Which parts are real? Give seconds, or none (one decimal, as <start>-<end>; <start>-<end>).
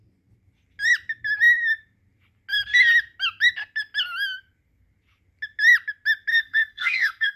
0.0-6.3